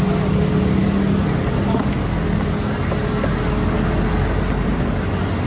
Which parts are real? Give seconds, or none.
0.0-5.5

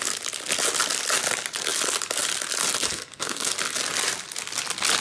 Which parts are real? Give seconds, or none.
0.0-2.9; 3.5-5.0

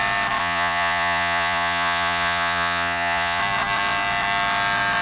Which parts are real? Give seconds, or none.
0.0-0.4; 3.4-5.0

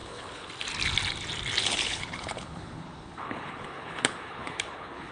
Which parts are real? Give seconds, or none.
0.5-1.6

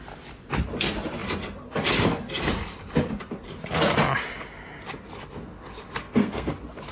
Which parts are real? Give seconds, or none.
0.0-6.0; 6.5-6.9

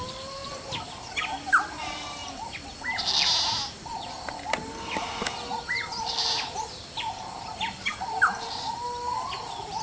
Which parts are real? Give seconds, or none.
0.0-9.8

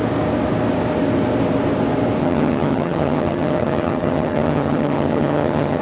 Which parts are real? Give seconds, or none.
0.0-2.2

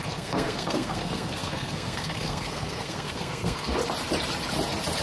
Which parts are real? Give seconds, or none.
3.8-5.0